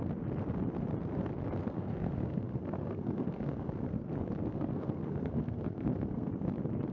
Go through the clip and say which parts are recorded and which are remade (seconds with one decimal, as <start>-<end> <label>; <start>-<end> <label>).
0.0-1.6 recorded; 1.6-4.1 remade; 4.1-4.5 recorded; 4.5-6.3 remade; 6.3-6.9 recorded